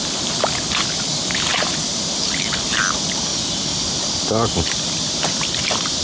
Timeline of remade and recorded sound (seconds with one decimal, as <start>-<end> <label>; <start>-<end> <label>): 0.0-1.5 recorded; 1.5-2.2 remade; 2.2-3.3 recorded; 3.3-4.9 remade; 4.9-6.0 recorded